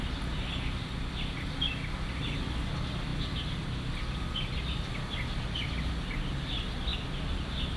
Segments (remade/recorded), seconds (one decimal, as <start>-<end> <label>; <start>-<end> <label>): 0.0-7.8 recorded